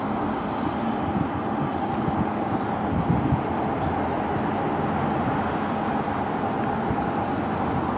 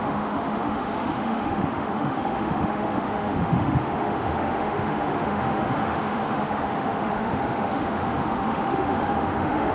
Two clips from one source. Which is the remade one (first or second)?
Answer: second